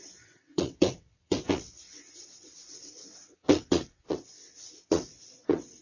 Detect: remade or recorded remade